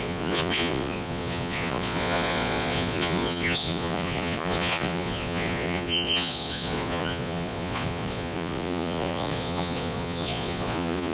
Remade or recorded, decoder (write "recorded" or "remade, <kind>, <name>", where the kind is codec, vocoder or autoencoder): remade, vocoder, Vocos